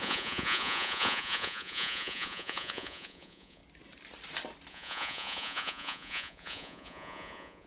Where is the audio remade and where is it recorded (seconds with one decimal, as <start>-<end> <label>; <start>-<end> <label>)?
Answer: 0.0-3.6 remade; 3.6-4.7 recorded; 4.7-7.7 remade